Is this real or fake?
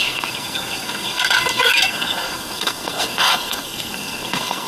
fake